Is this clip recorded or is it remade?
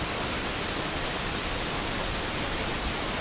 recorded